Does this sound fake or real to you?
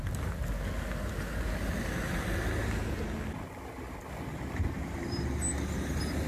real